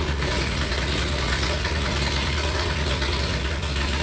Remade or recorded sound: remade